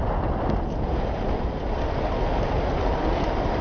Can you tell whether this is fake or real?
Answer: real